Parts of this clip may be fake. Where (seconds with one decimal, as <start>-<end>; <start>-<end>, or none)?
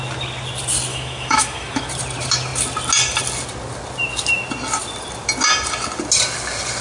0.9-1.9